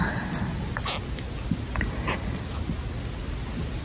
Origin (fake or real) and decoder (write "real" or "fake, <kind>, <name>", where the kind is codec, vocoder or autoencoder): real